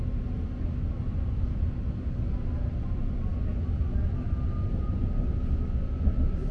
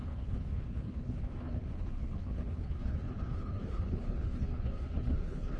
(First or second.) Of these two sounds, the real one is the first